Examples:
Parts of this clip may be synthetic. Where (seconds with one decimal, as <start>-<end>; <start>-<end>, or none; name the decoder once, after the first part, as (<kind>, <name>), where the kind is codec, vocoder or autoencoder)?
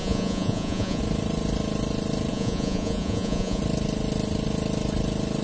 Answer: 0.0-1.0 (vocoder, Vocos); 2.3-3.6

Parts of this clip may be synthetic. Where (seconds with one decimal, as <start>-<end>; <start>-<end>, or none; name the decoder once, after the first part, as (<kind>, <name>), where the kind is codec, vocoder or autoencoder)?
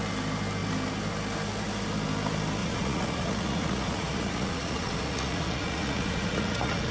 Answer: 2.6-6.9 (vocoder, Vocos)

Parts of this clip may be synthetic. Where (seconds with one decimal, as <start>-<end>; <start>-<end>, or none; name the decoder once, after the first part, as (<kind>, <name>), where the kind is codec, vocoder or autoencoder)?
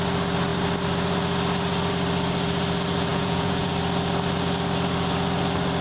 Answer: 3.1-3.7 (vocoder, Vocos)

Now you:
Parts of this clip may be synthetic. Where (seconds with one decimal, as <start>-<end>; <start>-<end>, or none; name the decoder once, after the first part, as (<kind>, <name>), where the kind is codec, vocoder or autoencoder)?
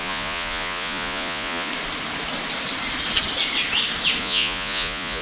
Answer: 0.0-1.7 (vocoder, Vocos); 4.2-5.2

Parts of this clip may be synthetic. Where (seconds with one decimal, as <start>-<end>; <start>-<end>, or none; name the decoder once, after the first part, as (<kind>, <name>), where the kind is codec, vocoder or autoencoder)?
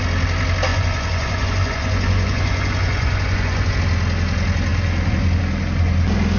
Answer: 0.7-3.7 (vocoder, Vocos)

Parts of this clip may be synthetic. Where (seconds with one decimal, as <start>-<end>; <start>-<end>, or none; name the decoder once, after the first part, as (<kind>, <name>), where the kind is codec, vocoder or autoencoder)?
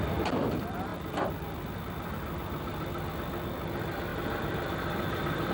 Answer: none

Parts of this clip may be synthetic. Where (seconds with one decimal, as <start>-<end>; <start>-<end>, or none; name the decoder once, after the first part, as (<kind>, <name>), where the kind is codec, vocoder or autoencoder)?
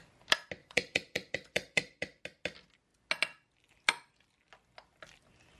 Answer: 0.6-2.2 (vocoder, Vocos)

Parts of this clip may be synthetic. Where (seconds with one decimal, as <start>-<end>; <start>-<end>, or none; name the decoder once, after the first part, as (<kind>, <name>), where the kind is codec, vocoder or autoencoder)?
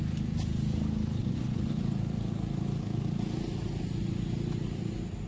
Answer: 1.2-1.8 (vocoder, Vocos)